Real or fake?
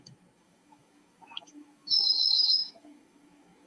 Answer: fake